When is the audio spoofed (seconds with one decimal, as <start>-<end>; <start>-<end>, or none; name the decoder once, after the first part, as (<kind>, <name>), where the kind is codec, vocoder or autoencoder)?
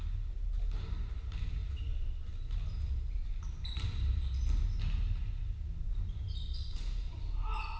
1.6-4.2 (vocoder, BigVGAN v2)